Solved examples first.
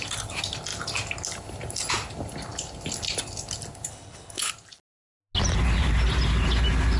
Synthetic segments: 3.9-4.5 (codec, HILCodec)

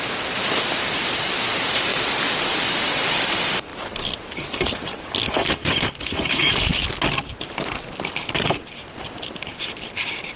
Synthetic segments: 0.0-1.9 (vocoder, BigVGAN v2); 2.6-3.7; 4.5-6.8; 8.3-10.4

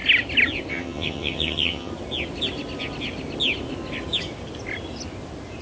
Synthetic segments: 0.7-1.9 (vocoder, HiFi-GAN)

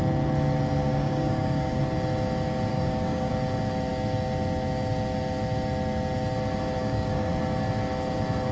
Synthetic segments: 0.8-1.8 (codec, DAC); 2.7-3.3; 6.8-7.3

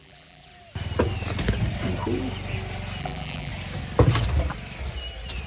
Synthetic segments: 0.0-0.5 (vocoder, BigVGAN v2); 3.0-3.5